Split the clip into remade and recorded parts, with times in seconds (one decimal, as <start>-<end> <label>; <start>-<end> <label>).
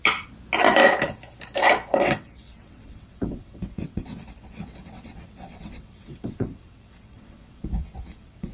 0.0-1.9 recorded; 1.9-8.5 remade